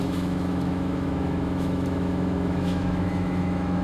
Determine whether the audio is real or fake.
fake